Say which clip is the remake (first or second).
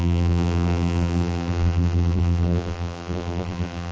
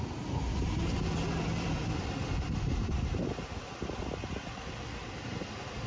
first